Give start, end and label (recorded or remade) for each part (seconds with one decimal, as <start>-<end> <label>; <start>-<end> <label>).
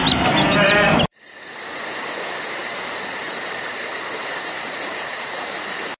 0.0-1.1 recorded; 1.1-1.8 remade; 1.8-2.6 recorded; 2.6-6.0 remade